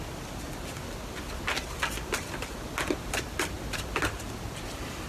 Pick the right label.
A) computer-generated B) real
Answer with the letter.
B